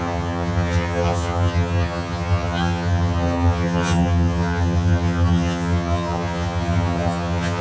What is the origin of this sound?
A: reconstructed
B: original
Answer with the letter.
A